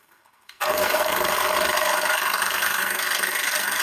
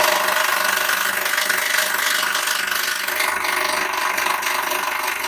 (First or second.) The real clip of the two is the second